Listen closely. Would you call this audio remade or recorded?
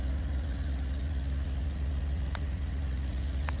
remade